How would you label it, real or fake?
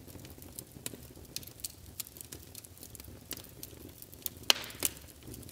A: real